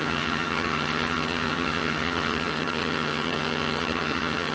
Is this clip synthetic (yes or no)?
yes